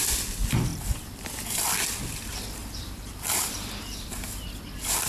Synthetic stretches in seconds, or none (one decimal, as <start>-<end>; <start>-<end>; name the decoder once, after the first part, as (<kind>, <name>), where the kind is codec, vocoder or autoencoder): 0.7-1.4 (vocoder, BigVGAN v2); 2.6-3.8